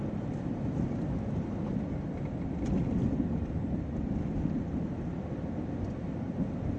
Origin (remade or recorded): remade